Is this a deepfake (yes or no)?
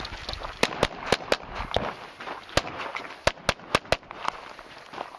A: no